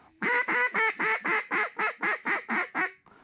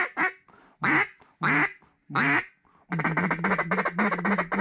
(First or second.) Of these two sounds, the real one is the second